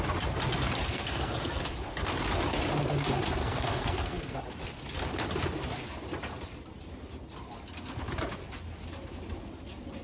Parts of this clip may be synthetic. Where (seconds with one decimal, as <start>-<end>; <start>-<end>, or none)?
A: 0.8-1.6; 3.4-4.4